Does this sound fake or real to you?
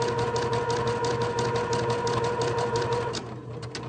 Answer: real